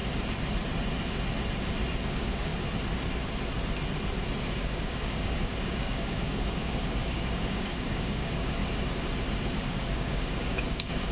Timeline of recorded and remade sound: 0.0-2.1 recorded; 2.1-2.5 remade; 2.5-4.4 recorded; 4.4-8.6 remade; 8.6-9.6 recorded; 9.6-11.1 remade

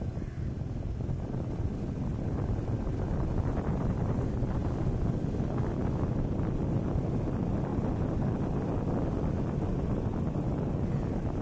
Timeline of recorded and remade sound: 0.0-11.4 recorded

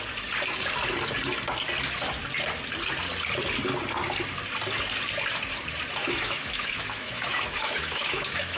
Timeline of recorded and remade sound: 0.0-6.0 recorded; 6.0-8.6 remade

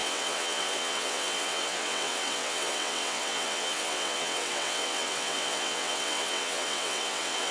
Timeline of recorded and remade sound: 0.0-7.5 remade

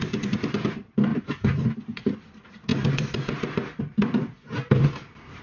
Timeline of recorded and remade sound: 0.0-1.1 remade; 1.1-2.0 recorded; 2.0-5.4 remade